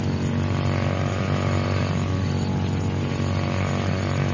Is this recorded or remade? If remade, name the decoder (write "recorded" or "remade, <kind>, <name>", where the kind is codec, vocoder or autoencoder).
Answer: recorded